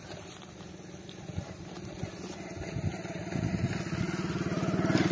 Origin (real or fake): real